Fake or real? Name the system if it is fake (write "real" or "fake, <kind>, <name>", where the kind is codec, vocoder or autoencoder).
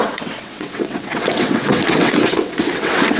fake, vocoder, WaveNeXt